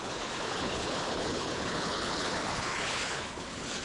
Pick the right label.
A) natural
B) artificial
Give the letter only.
B